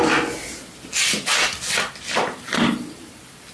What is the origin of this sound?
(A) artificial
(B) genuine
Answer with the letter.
A